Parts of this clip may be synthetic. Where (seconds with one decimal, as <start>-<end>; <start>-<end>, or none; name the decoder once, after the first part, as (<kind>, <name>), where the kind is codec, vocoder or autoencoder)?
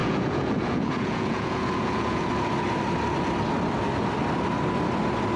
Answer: 0.0-2.3 (vocoder, Vocos)